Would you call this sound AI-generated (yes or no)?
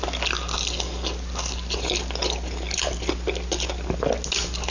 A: no